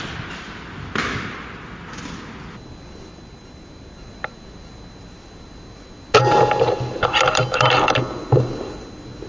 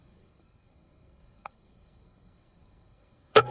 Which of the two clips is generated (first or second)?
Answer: second